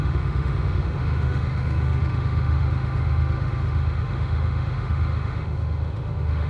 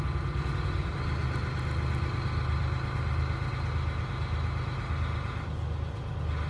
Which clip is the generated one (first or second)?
first